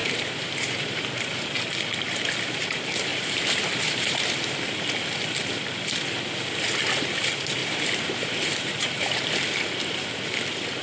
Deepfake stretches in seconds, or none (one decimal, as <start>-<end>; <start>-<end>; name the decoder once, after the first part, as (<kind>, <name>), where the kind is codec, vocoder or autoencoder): 0.0-1.0 (vocoder, BigVGAN v2); 3.1-4.2; 7.6-9.3